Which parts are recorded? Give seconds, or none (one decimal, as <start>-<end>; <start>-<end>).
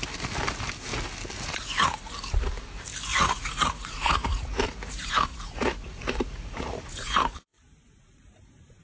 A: 0.0-3.1; 4.6-5.3